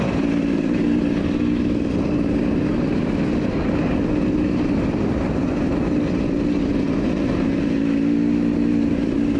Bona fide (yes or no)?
yes